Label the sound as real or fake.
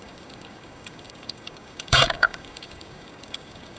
fake